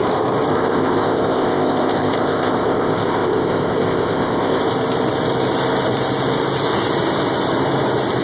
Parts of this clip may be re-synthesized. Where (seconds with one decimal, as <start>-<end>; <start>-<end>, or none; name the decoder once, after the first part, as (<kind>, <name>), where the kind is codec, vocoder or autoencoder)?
0.5-4.6 (codec, ZipCodec)